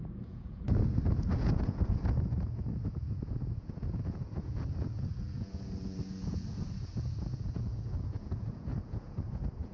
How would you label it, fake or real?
fake